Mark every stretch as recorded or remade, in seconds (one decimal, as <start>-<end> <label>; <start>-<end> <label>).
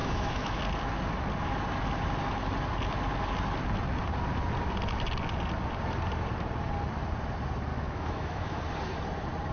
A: 0.0-0.6 remade; 0.6-7.7 recorded; 7.7-8.6 remade; 8.6-9.5 recorded